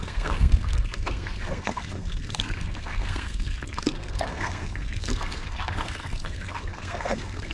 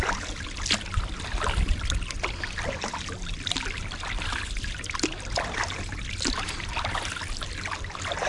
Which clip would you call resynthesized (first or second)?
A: first